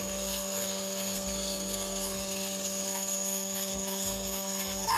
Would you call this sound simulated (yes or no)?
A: yes